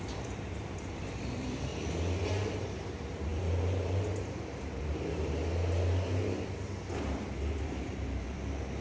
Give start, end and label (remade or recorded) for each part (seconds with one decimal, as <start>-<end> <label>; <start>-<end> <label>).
0.0-1.7 remade; 1.7-2.5 recorded; 2.5-5.4 remade; 5.4-7.6 recorded; 7.6-8.8 remade